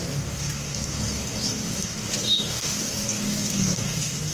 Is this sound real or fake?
fake